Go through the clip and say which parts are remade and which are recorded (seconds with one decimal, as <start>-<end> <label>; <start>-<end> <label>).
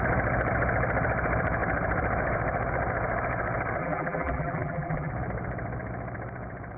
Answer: 0.0-3.8 recorded; 3.8-5.1 remade; 5.1-6.8 recorded